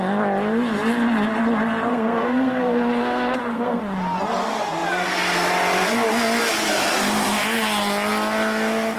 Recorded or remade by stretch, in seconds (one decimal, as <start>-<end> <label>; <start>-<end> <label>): 0.0-1.9 recorded; 1.9-3.8 remade; 3.8-9.0 recorded

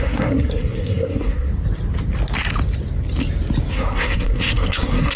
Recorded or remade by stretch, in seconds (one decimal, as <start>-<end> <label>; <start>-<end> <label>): 0.0-1.5 remade; 1.5-3.7 recorded; 3.7-5.2 remade

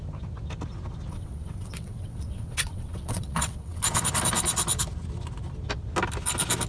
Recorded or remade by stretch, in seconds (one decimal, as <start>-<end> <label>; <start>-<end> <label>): 0.0-1.1 recorded; 1.1-3.8 remade; 3.8-6.7 recorded

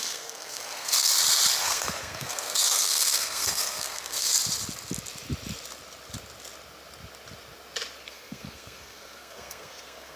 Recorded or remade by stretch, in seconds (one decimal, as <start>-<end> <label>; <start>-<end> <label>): 0.0-1.1 remade; 1.1-1.6 recorded; 1.6-4.3 remade; 4.3-8.1 recorded; 8.1-10.2 remade

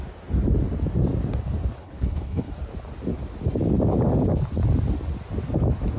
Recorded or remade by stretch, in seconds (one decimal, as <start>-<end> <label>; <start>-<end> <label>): 0.0-1.8 recorded; 1.8-2.5 remade; 2.5-6.0 recorded

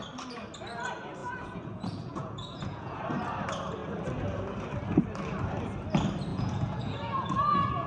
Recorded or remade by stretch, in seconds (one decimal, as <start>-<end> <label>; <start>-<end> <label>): 0.0-1.2 recorded; 1.2-3.0 remade; 3.0-6.3 recorded; 6.3-7.9 remade

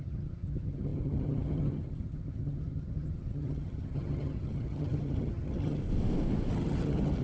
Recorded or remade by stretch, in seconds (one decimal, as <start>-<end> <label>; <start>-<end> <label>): 0.0-5.8 remade; 5.8-6.5 recorded; 6.5-7.2 remade